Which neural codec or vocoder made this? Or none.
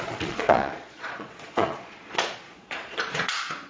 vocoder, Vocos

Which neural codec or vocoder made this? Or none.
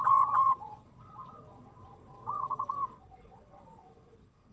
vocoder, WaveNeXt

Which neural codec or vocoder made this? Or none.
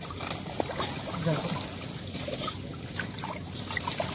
none